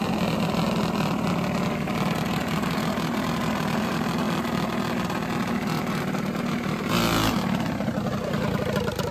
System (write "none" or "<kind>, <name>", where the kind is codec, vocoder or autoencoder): none